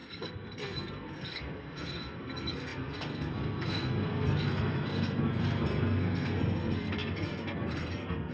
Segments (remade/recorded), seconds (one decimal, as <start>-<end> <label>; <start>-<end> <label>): 0.0-8.3 remade